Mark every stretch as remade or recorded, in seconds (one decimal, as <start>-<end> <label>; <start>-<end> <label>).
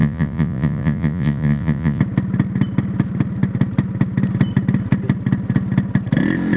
0.0-2.0 remade; 2.0-6.6 recorded